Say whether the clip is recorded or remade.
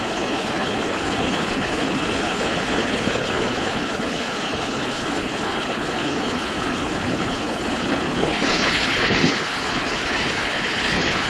remade